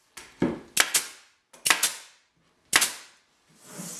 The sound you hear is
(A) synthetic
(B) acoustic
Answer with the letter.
B